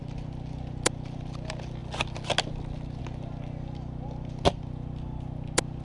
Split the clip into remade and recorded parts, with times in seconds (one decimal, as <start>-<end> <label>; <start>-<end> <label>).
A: 0.0-5.8 recorded